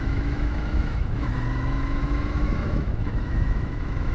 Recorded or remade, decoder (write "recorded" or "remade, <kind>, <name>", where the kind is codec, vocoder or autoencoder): remade, autoencoder, DAC-VAE